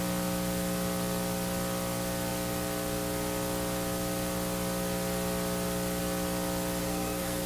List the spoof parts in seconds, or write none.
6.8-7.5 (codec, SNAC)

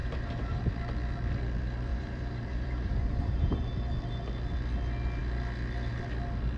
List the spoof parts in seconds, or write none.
0.0-0.6 (vocoder, BigVGAN v2); 1.9-3.6

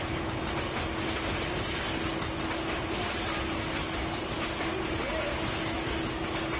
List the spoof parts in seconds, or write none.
none

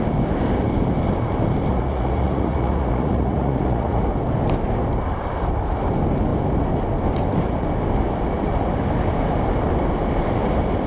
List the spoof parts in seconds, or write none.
1.7-4.0 (vocoder, Vocos)

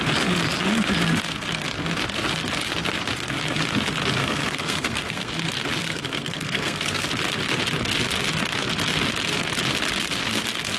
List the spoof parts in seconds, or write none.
4.2-5.3 (codec, SNAC); 5.8-7.1

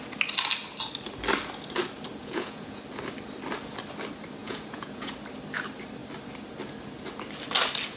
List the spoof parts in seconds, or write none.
2.2-2.8 (vocoder, Vocos); 4.4-5.1

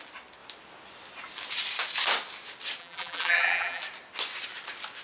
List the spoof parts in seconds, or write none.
2.8-3.8 (vocoder, BigVGAN v2)